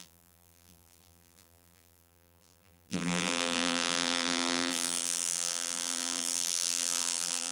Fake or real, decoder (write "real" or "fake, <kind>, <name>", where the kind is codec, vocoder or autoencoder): fake, vocoder, BigVGAN v2